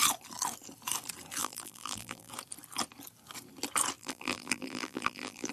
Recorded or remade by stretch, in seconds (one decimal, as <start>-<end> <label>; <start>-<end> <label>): 0.0-1.4 recorded; 1.4-2.3 remade; 2.3-4.0 recorded; 4.0-5.5 remade